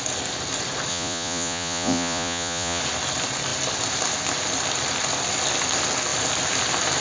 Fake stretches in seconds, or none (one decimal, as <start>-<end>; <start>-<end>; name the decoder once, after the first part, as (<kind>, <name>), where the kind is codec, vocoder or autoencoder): 0.9-2.8 (vocoder, Vocos)